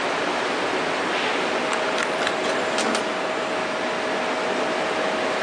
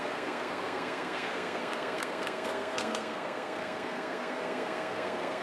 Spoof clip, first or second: second